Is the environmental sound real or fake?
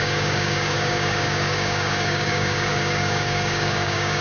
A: fake